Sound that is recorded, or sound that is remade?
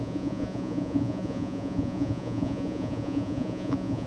remade